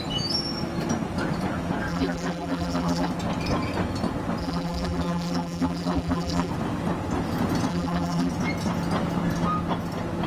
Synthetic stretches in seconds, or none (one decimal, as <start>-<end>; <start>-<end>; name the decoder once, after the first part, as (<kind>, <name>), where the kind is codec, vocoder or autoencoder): 1.9-3.1 (vocoder, BigVGAN v2); 4.4-6.5; 7.7-8.3